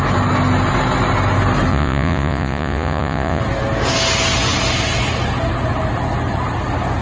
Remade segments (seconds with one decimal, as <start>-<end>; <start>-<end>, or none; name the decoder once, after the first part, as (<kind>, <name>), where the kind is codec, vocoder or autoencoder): 1.7-3.4 (vocoder, Vocos)